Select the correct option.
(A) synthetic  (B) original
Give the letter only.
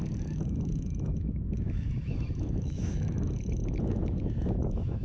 A